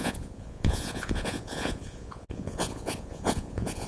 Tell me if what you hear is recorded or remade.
remade